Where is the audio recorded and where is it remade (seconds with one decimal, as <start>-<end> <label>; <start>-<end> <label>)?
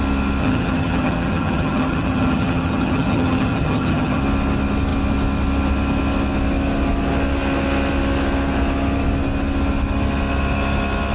0.0-0.4 recorded; 0.4-4.2 remade; 4.2-11.1 recorded